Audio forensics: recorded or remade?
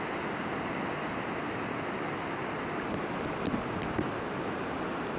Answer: recorded